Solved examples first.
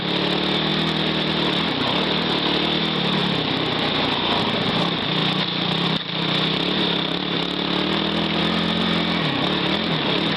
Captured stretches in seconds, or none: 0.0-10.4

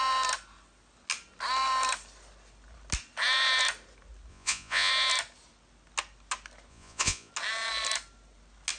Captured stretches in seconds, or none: 0.0-4.3; 4.9-6.7; 7.3-8.8

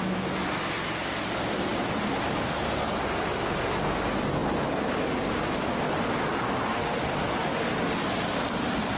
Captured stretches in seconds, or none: 0.0-9.0

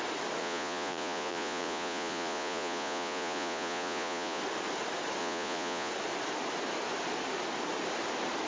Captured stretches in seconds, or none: 0.0-0.4; 4.4-5.2; 5.9-8.5

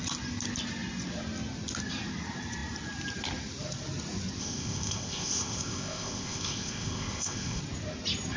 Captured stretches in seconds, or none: 0.0-4.4; 7.6-8.4

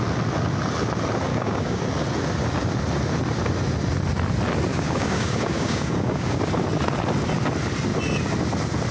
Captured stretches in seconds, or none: 0.0-1.3; 1.8-4.7; 6.4-8.9